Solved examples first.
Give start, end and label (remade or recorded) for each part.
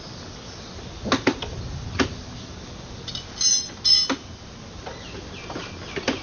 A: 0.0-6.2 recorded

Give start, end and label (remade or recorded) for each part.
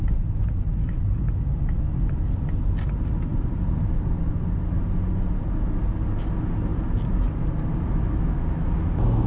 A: 0.0-3.3 recorded; 3.3-4.3 remade; 4.3-6.7 recorded; 6.7-7.4 remade; 7.4-9.3 recorded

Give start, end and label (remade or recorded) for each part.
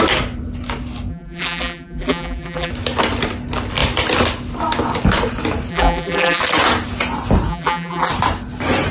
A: 0.0-1.1 recorded; 1.1-2.7 remade; 2.7-5.7 recorded; 5.7-6.4 remade; 6.4-7.5 recorded; 7.5-8.1 remade; 8.1-8.9 recorded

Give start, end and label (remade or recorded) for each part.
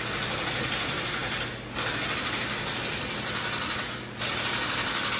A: 0.0-5.2 recorded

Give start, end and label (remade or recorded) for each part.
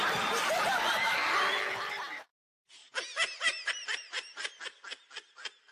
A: 0.0-2.0 remade; 2.0-2.8 recorded; 2.8-4.6 remade; 4.6-5.7 recorded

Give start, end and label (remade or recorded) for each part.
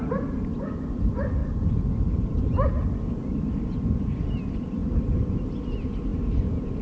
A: 0.0-1.4 recorded; 1.4-2.7 remade; 2.7-6.8 recorded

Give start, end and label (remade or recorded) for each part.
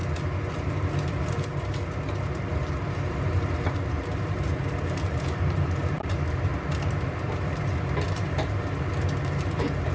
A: 0.0-0.5 recorded; 0.5-6.5 remade; 6.5-7.2 recorded; 7.2-9.9 remade